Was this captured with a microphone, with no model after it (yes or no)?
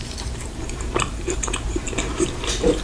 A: no